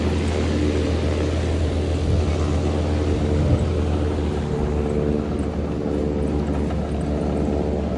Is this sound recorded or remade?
recorded